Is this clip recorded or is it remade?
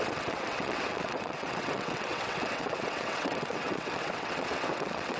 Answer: remade